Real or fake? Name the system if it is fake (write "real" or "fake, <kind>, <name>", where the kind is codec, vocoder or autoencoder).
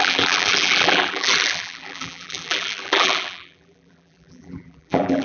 fake, vocoder, BigVGAN v2